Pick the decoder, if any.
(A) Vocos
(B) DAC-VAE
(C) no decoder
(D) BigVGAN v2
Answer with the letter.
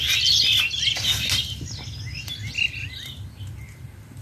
C